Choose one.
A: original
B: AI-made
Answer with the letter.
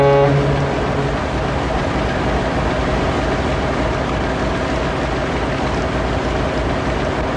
A